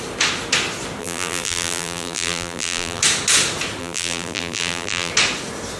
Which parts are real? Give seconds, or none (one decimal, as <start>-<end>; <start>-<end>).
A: 0.0-1.0; 3.0-3.8; 5.1-5.8